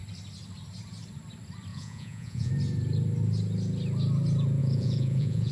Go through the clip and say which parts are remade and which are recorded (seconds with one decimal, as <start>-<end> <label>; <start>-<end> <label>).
0.0-1.7 recorded; 1.7-2.5 remade; 2.5-4.6 recorded; 4.6-5.5 remade